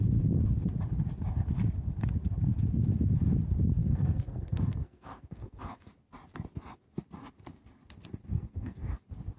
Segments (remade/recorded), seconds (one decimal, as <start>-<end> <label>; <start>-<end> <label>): 0.0-3.8 recorded; 3.8-5.9 remade; 5.9-8.3 recorded; 8.3-9.0 remade; 9.0-9.4 recorded